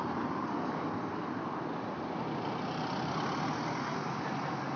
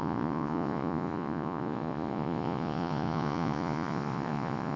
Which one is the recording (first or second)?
first